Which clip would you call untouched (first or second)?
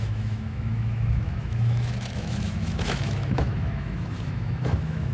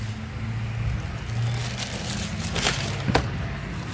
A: second